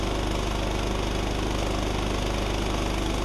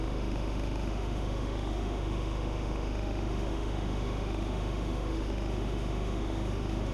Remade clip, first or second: second